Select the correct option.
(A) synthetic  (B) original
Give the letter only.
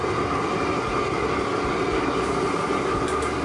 B